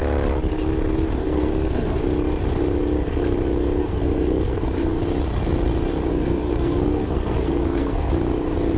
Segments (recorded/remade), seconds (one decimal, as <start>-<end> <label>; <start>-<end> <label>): 0.0-1.2 recorded; 1.2-2.0 remade; 2.0-3.8 recorded; 3.8-5.0 remade; 5.0-6.1 recorded; 6.1-8.1 remade; 8.1-8.8 recorded